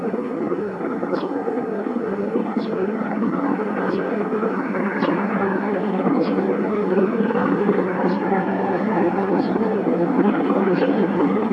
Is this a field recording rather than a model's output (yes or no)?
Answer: no